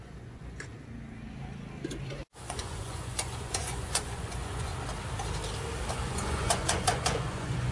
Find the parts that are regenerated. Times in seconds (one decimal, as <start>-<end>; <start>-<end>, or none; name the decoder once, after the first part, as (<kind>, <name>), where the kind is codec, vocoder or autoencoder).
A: 0.0-0.7 (vocoder, Vocos); 2.1-4.7; 5.9-7.7